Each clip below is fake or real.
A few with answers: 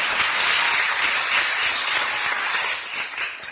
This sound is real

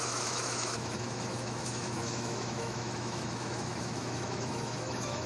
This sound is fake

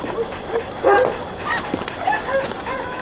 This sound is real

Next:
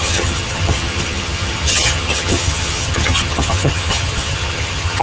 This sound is fake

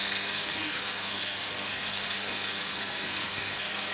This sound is fake